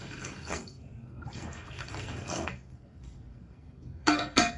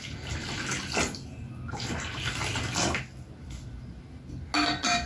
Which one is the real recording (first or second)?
second